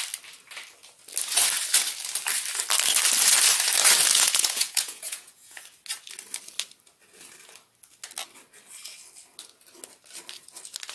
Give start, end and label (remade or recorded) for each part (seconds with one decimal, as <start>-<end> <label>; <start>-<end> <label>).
0.0-4.1 recorded; 4.1-5.6 remade; 5.6-10.9 recorded